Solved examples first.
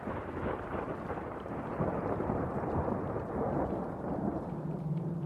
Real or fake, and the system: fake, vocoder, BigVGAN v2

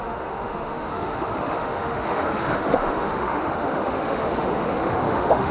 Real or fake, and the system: fake, autoencoder, DAC-VAE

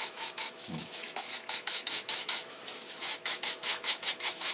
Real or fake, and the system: fake, autoencoder, DAC-VAE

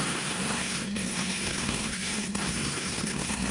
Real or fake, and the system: fake, codec, SNAC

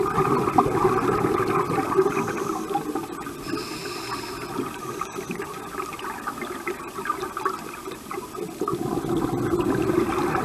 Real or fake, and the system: real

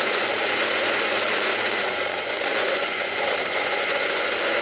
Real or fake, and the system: fake, vocoder, Vocos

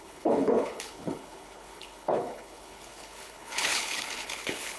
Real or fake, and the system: fake, codec, HILCodec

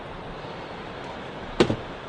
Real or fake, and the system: fake, vocoder, BigVGAN v2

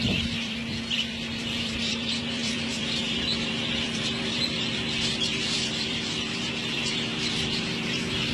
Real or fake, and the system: fake, vocoder, BigVGAN v2